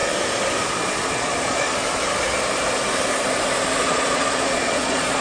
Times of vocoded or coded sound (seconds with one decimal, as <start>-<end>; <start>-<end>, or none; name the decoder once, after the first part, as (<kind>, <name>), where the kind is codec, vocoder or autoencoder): 1.1-1.8 (vocoder, Vocos); 3.8-5.2